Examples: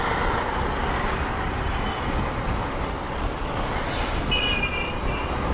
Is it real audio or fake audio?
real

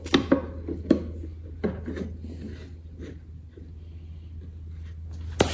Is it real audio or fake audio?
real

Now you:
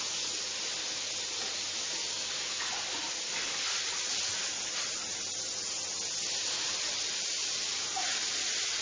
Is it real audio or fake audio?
real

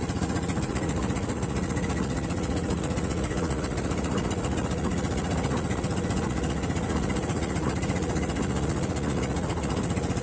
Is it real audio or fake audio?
fake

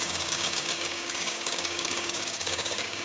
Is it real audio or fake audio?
fake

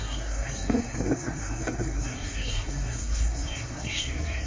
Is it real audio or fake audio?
fake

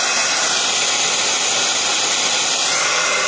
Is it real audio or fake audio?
real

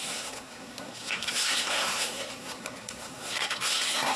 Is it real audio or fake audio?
fake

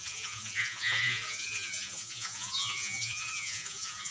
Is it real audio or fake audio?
fake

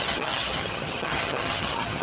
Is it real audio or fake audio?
fake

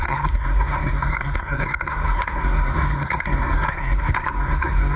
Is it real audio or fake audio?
fake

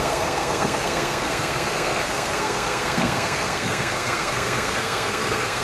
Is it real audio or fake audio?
fake